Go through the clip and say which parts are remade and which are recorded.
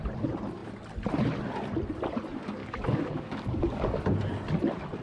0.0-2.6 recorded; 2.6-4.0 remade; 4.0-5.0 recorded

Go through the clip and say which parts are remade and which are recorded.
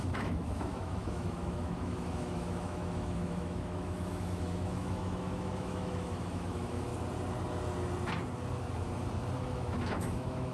0.0-6.9 remade; 6.9-9.4 recorded; 9.4-10.5 remade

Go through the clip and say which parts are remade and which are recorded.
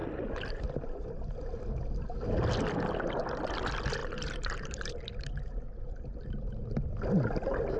0.0-4.0 recorded; 4.0-4.9 remade; 4.9-7.8 recorded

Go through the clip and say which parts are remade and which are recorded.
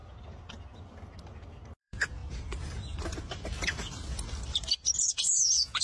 0.0-1.8 recorded; 1.8-2.2 remade; 2.2-5.1 recorded; 5.1-5.8 remade